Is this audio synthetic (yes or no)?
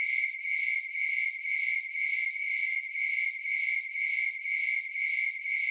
no